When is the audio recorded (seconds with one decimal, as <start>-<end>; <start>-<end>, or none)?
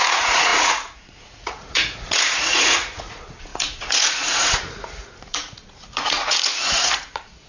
none